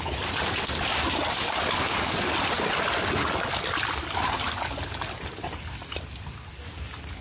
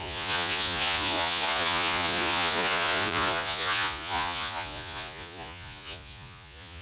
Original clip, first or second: first